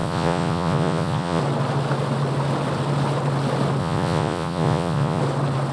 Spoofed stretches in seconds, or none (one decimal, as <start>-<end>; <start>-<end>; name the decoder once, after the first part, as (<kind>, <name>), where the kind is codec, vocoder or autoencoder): 0.0-1.4 (vocoder, Vocos); 3.8-5.2